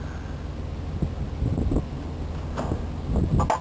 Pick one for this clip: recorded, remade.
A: recorded